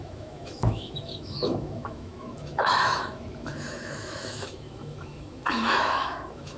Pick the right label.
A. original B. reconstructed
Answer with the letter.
B